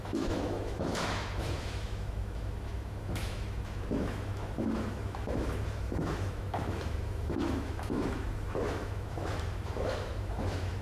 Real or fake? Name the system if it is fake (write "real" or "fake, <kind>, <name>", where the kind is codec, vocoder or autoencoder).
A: fake, autoencoder, DAC-VAE